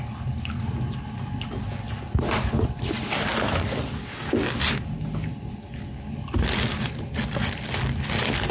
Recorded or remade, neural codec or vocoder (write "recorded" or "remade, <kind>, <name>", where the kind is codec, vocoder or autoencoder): recorded